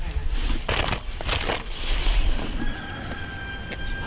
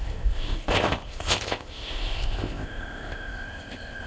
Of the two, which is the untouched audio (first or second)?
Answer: first